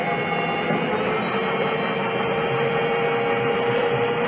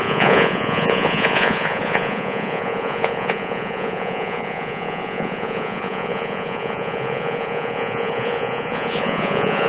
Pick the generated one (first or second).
second